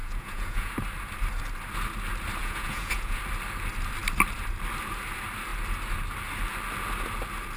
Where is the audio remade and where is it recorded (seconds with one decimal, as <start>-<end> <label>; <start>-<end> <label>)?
0.0-0.7 remade; 0.7-2.4 recorded; 2.4-3.2 remade; 3.2-7.6 recorded